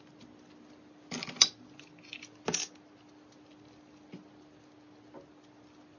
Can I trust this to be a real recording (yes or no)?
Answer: yes